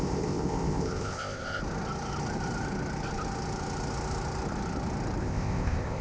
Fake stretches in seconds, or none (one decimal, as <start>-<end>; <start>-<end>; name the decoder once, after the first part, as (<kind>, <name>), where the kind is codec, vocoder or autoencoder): 0.0-1.6 (codec, ZipCodec); 5.2-6.0